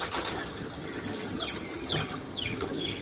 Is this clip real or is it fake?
fake